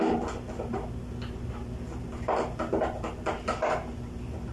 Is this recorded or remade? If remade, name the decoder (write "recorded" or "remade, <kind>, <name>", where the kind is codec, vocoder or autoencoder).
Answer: recorded